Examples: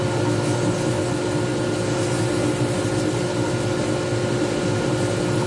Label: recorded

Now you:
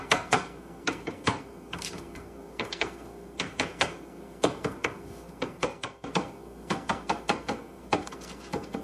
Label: remade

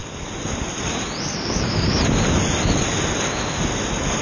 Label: recorded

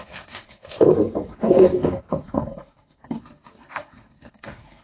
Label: remade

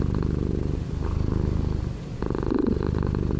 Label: recorded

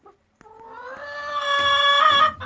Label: recorded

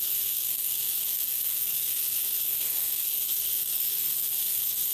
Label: remade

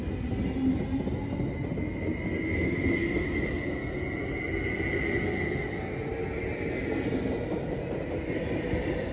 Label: recorded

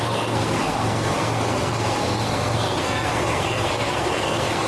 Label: remade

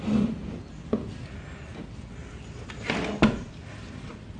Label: recorded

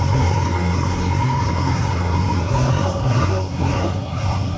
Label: remade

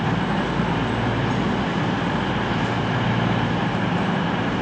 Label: recorded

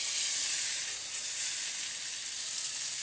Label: recorded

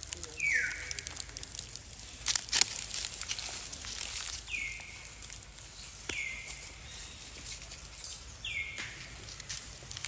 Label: recorded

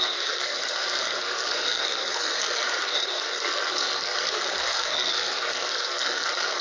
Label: remade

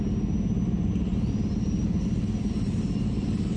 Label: recorded